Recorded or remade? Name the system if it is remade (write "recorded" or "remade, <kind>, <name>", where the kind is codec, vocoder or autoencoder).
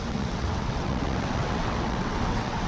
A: remade, vocoder, WaveNeXt